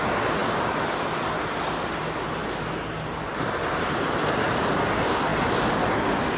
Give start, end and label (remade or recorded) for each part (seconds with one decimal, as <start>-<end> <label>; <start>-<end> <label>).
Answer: 0.0-2.4 recorded; 2.4-4.0 remade; 4.0-6.4 recorded